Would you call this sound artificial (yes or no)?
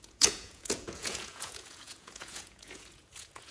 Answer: yes